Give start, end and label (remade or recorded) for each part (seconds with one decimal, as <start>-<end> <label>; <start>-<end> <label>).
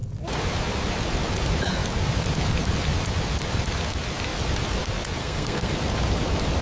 0.0-5.2 recorded; 5.2-5.7 remade; 5.7-6.6 recorded